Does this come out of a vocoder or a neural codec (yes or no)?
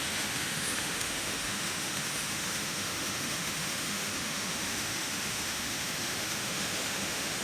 yes